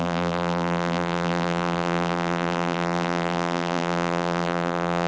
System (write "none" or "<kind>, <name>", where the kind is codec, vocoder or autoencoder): vocoder, BigVGAN v2